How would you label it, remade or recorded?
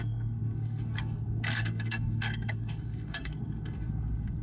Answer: remade